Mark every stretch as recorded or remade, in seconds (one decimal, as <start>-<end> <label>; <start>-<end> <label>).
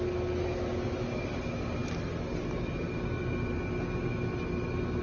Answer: 0.0-5.0 recorded